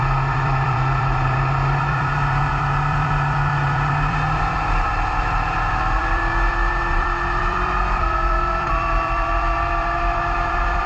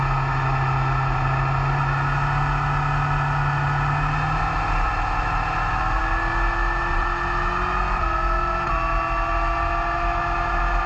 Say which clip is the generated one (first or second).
first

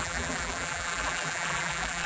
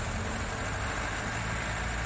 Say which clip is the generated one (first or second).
first